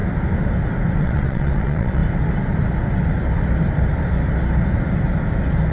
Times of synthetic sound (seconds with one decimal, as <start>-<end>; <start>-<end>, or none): 1.0-2.0